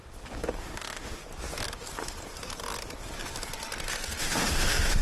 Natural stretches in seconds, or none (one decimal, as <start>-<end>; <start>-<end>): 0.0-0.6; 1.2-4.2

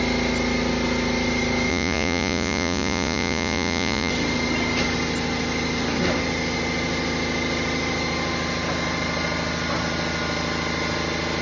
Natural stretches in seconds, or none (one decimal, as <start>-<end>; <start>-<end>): 0.0-1.7; 4.1-11.4

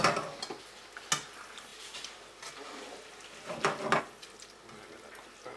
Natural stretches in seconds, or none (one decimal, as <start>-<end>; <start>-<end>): 0.0-5.6